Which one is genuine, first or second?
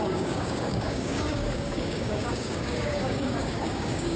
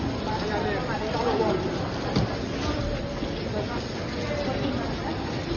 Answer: second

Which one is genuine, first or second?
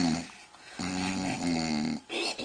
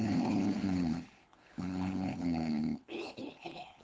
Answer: first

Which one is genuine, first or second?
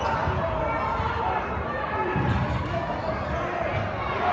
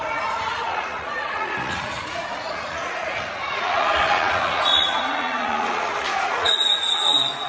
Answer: first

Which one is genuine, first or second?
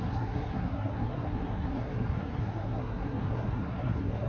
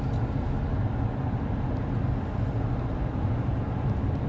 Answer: second